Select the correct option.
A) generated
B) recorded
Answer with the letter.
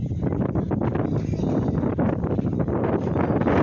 B